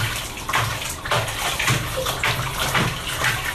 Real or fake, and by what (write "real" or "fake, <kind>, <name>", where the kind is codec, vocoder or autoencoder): real